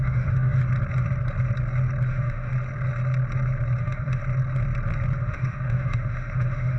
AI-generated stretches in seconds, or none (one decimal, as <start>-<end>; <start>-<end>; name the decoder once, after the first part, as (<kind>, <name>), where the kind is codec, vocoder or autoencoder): 0.0-0.6 (autoencoder, DAC-VAE); 2.1-2.5; 3.8-4.2; 5.2-6.8